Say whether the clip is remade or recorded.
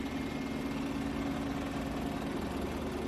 recorded